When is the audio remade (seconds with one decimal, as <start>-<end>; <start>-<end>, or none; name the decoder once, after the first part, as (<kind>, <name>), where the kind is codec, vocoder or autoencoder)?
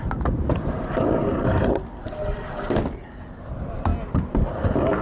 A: none